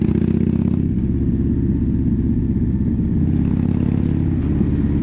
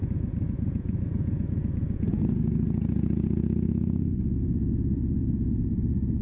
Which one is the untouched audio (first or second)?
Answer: first